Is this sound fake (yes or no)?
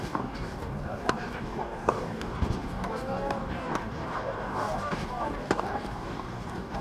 yes